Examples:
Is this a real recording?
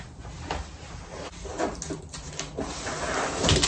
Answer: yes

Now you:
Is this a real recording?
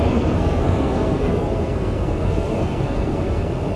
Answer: no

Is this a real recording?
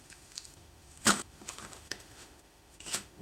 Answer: no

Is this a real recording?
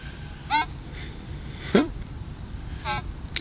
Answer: no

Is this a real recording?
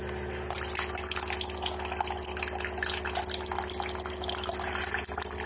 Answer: no